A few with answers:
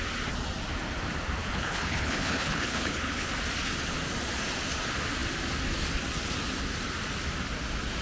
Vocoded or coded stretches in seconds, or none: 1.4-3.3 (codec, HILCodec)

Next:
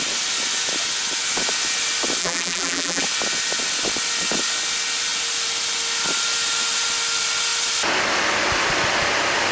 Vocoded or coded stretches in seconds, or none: 2.2-3.0 (vocoder, BigVGAN v2)